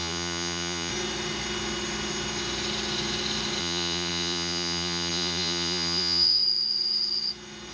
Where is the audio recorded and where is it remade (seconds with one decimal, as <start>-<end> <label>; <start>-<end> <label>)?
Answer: 0.0-0.9 remade; 0.9-3.6 recorded; 3.6-6.4 remade; 6.4-7.7 recorded